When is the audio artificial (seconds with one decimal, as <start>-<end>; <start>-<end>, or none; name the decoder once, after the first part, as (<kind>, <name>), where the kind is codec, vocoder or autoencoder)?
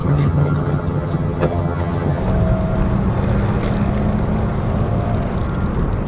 0.0-2.2 (vocoder, HiFi-GAN)